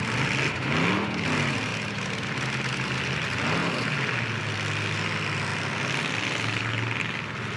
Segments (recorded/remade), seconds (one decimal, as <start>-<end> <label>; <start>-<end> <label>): 0.0-7.6 recorded